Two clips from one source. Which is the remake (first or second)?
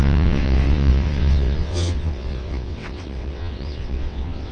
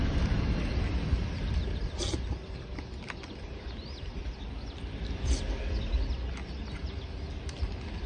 first